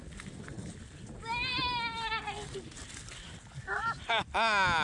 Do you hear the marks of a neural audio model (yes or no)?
no